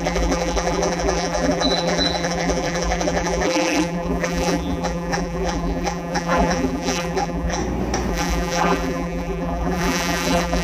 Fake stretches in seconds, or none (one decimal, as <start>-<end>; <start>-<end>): 0.0-7.6; 8.1-10.6